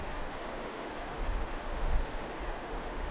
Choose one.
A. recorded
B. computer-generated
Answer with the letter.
B